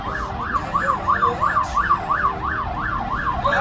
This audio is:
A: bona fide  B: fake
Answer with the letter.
A